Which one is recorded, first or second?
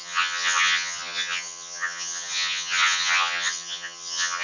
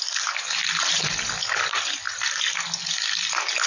second